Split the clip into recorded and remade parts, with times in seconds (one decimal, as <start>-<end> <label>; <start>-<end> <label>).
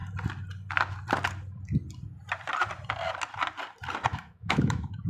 0.0-4.1 recorded; 4.1-5.1 remade